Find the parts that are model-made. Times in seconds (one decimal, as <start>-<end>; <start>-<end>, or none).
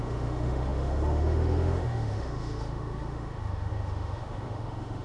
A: 0.0-5.0